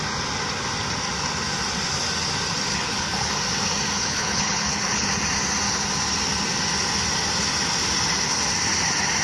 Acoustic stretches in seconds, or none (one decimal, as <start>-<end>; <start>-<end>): 0.0-2.7; 3.3-4.0; 5.1-9.2